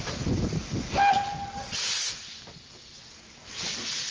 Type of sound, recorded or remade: recorded